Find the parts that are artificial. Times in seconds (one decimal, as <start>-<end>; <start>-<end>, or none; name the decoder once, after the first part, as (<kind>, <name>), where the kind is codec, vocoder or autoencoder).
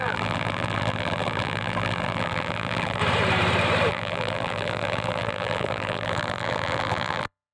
0.0-3.0 (vocoder, BigVGAN v2); 3.9-7.5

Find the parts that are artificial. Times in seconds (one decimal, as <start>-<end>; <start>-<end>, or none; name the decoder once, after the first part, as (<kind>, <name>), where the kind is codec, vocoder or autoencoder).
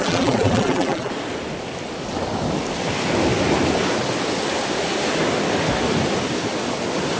0.0-1.1 (vocoder, BigVGAN v2)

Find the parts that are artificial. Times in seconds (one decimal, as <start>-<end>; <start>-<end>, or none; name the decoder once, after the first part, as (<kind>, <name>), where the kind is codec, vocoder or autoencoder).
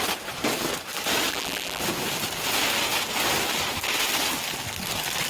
1.3-1.8 (vocoder, BigVGAN v2)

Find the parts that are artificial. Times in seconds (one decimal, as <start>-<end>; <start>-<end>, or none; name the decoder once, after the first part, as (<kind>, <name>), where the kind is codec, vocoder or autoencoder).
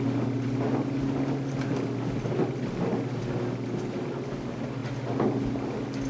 none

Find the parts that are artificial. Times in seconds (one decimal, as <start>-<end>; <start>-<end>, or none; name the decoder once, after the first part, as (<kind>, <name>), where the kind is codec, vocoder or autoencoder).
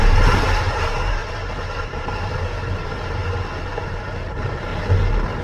0.0-1.2 (vocoder, BigVGAN v2); 1.8-3.2; 4.3-4.7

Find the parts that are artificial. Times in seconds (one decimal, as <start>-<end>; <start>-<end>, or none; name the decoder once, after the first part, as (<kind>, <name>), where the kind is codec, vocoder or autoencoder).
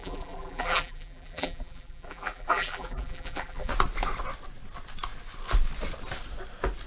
0.0-3.7 (vocoder, BigVGAN v2)